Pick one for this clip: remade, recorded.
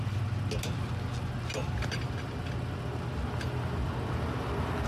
recorded